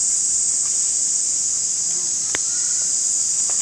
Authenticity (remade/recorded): recorded